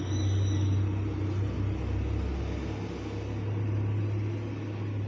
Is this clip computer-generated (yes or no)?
no